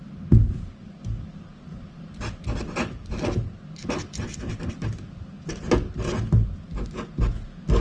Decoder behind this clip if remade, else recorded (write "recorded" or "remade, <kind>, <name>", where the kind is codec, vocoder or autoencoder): recorded